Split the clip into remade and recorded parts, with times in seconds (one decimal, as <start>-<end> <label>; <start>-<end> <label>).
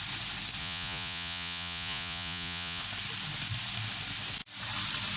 0.0-0.6 recorded; 0.6-2.8 remade; 2.8-5.2 recorded